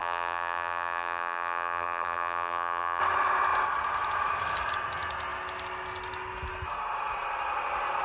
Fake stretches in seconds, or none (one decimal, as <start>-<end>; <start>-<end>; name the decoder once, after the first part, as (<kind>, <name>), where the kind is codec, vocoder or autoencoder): 0.0-3.0 (vocoder, BigVGAN v2)